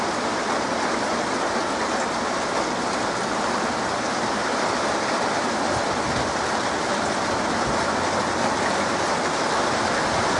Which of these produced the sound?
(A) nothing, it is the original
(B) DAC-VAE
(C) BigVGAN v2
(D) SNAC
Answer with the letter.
A